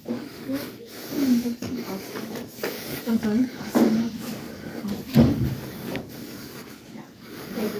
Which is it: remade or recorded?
remade